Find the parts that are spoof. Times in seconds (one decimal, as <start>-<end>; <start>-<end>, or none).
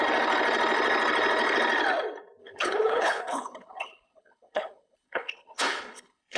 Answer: 2.4-6.4